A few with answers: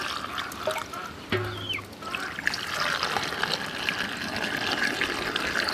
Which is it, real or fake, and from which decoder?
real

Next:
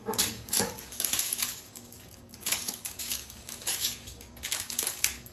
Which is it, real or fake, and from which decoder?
fake, codec, DAC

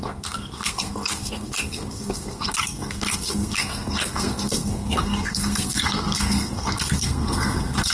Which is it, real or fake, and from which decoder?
fake, codec, SNAC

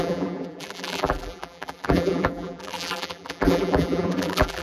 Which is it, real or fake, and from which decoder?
fake, vocoder, BigVGAN v2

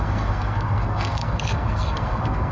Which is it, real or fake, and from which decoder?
fake, codec, SNAC